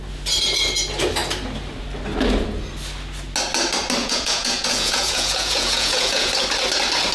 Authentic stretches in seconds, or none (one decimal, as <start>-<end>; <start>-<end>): 0.0-4.0; 6.3-7.1